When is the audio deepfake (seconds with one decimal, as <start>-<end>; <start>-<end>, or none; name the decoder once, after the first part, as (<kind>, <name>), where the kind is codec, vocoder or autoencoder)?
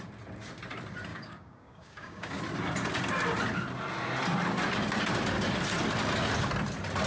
1.1-2.4 (codec, DAC)